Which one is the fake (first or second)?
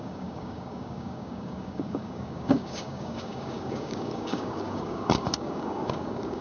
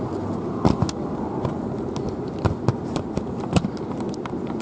first